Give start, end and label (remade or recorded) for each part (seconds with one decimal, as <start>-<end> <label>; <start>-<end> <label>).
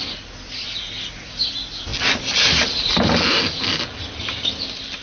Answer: 0.0-5.0 recorded